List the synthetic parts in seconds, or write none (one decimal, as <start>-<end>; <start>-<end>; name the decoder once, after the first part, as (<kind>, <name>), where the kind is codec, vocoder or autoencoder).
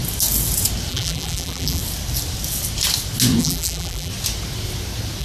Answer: 0.9-1.8 (vocoder, BigVGAN v2); 3.4-4.1